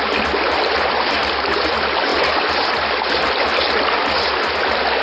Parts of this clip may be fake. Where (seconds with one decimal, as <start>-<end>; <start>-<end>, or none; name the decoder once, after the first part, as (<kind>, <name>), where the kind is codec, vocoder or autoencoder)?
none